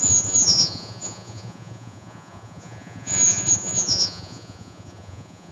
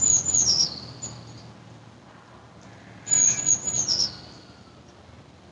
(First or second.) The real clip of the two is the second